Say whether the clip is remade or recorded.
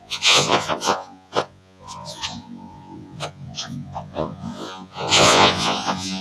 remade